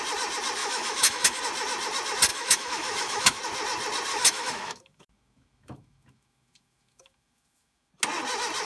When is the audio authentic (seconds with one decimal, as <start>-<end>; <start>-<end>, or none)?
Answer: 0.0-0.6; 1.4-2.3; 3.4-4.1; 7.9-8.7

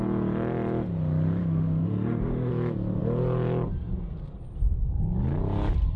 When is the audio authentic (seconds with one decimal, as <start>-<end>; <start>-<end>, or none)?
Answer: 0.0-1.4; 2.5-6.0

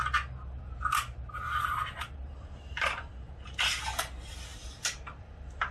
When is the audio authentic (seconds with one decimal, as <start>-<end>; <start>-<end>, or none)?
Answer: 0.0-5.7

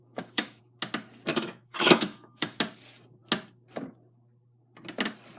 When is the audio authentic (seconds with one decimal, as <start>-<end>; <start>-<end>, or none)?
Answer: 0.6-1.3; 2.6-5.4

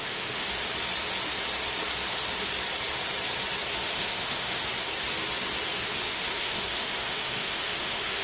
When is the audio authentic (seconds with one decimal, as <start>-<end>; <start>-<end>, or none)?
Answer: 0.5-3.7; 4.7-5.8

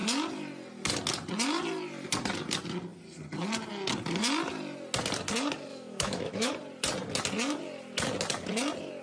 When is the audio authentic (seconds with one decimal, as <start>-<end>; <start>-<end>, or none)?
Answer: 0.0-5.7; 6.5-9.0

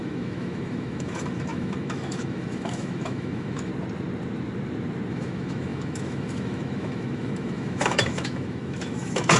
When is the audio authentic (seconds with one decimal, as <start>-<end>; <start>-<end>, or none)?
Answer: 3.7-5.1

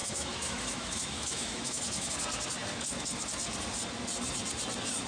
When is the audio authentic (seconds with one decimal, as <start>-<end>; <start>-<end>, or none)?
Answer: 2.1-5.1